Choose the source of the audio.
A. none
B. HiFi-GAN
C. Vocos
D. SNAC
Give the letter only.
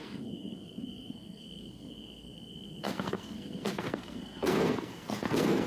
D